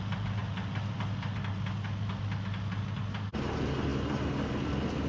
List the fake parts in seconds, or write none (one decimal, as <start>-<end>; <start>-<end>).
none